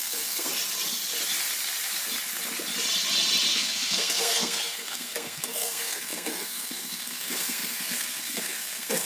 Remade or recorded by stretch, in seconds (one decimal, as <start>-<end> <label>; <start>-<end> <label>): 0.0-0.5 remade; 0.5-3.5 recorded; 3.5-9.1 remade